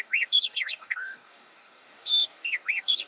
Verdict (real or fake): fake